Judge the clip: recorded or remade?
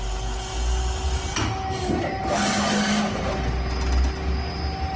recorded